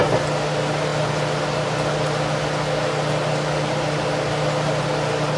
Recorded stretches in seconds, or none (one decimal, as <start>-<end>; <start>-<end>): 0.0-5.4